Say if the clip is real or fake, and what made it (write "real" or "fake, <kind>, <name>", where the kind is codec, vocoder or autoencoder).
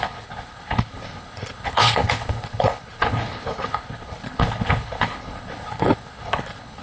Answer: fake, codec, HILCodec